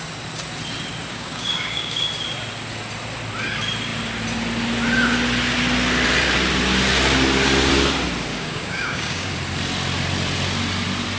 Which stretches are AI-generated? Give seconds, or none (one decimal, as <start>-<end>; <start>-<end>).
1.1-2.1; 8.3-9.3